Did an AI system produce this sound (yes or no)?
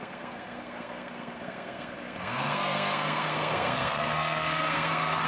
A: yes